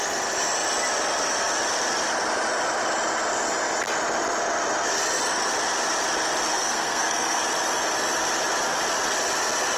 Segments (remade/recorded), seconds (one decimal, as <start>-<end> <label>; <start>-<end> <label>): 0.0-6.5 recorded; 6.5-7.4 remade; 7.4-9.8 recorded